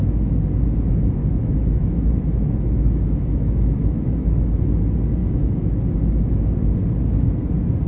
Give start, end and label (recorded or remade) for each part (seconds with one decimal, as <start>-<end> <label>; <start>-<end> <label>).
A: 0.0-1.2 recorded; 1.2-4.4 remade; 4.4-5.2 recorded; 5.2-5.8 remade; 5.8-7.9 recorded

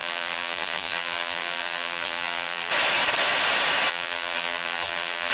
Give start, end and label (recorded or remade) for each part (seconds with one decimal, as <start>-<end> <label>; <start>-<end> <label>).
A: 0.0-2.7 remade; 2.7-3.9 recorded; 3.9-5.3 remade